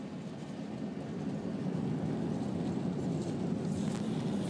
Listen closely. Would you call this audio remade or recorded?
recorded